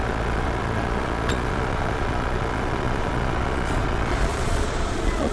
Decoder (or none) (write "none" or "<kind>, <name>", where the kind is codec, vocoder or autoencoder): vocoder, Vocos